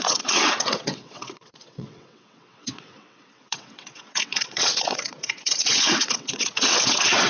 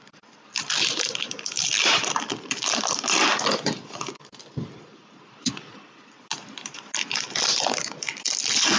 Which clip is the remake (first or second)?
first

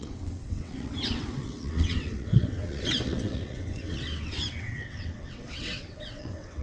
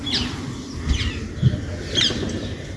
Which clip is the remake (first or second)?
first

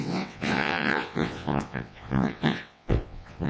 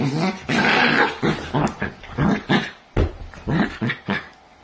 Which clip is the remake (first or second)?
first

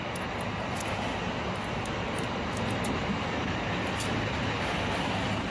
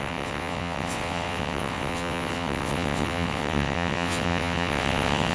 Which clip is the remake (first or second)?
second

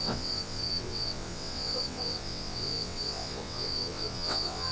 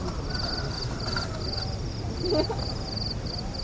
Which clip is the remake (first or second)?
first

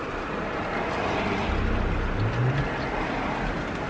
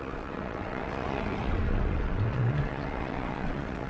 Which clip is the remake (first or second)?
second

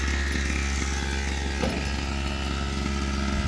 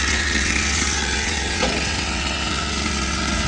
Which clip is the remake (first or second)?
second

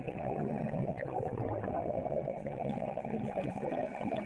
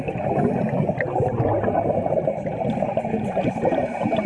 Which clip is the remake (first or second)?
first